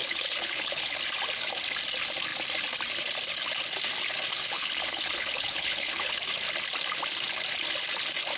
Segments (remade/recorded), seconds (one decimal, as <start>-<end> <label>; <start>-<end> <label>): 0.0-0.9 remade; 0.9-4.3 recorded; 4.3-6.1 remade; 6.1-8.4 recorded

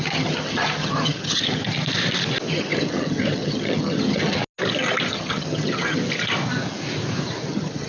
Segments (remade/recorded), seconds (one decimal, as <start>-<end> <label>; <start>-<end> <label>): 0.0-1.6 remade; 1.6-2.5 recorded; 2.5-4.4 remade; 4.4-5.1 recorded; 5.1-6.0 remade; 6.0-7.5 recorded; 7.5-7.9 remade

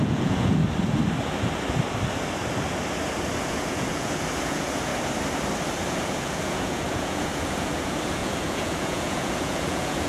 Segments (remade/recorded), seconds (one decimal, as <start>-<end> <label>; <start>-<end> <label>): 0.0-0.6 remade; 0.6-3.4 recorded; 3.4-4.9 remade; 4.9-5.9 recorded; 5.9-10.1 remade

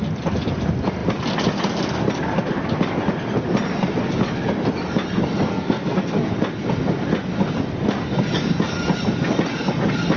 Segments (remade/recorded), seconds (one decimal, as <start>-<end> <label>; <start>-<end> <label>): 0.0-5.5 recorded; 5.5-6.3 remade; 6.3-10.2 recorded

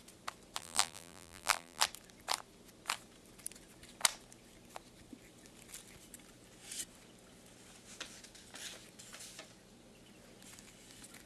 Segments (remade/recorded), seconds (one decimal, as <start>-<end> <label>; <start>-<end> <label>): 0.0-0.6 recorded; 0.6-1.8 remade; 1.8-11.3 recorded

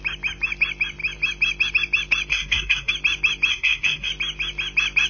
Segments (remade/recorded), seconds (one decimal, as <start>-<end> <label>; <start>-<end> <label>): 0.0-2.3 recorded; 2.3-2.9 remade; 2.9-3.5 recorded; 3.5-4.1 remade; 4.1-5.1 recorded